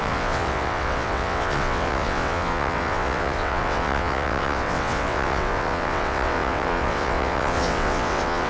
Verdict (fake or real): fake